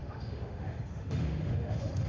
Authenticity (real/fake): fake